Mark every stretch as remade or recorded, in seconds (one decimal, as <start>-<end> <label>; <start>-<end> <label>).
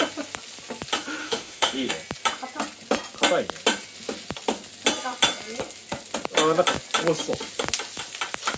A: 0.0-1.2 recorded; 1.2-1.9 remade; 1.9-8.6 recorded